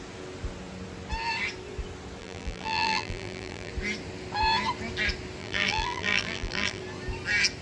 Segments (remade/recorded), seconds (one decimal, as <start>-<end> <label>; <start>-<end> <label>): 0.0-2.2 recorded; 2.2-3.7 remade; 3.7-5.4 recorded; 5.4-6.8 remade; 6.8-7.6 recorded